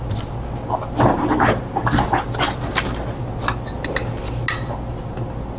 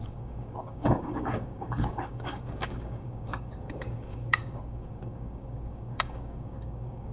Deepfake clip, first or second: second